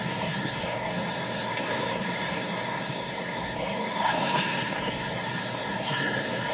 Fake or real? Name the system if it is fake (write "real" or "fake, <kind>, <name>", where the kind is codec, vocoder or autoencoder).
fake, codec, SNAC